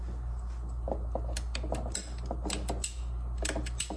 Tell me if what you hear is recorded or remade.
recorded